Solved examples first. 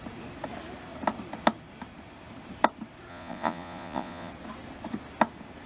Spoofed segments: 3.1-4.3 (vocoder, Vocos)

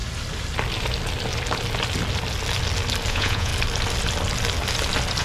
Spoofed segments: 3.1-3.5 (vocoder, Vocos)

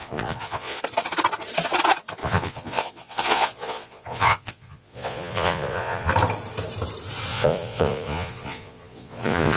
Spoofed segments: 0.0-0.8 (vocoder, Vocos); 2.2-6.1; 7.3-9.6

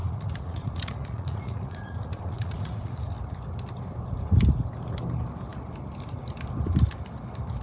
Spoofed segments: 0.0-3.0 (vocoder, Vocos)